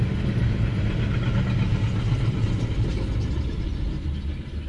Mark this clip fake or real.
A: real